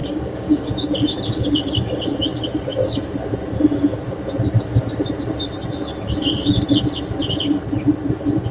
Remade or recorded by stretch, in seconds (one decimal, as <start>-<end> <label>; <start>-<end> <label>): 0.0-0.7 remade; 0.7-8.5 recorded